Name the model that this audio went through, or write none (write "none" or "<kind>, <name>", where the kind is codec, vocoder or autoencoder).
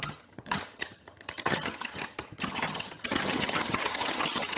vocoder, HiFi-GAN